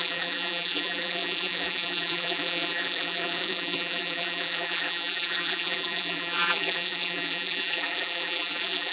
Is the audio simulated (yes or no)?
yes